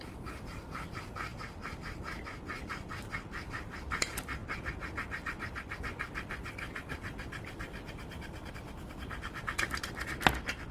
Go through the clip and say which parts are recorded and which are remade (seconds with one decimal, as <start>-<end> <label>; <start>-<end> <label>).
0.0-10.7 recorded